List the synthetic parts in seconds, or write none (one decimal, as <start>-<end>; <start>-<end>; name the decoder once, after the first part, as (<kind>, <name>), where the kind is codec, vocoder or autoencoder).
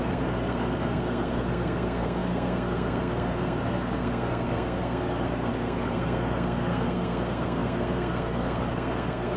0.0-9.4 (codec, SNAC)